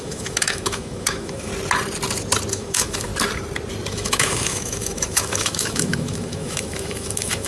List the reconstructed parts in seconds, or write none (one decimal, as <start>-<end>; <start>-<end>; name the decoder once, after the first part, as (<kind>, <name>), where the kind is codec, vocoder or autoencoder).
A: 0.0-1.5 (autoencoder, DAC-VAE); 2.5-3.1; 3.9-7.5